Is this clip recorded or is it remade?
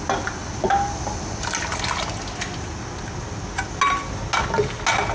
recorded